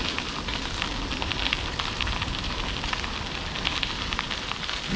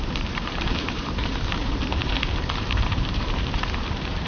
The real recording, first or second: first